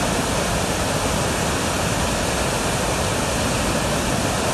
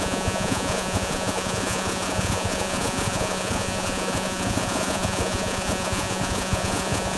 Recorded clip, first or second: first